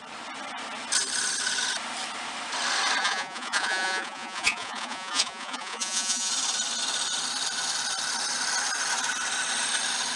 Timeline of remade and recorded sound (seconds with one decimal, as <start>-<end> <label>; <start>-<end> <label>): 0.0-3.0 recorded; 3.0-6.3 remade; 6.3-10.2 recorded